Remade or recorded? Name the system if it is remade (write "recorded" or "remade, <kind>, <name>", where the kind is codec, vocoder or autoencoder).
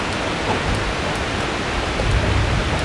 recorded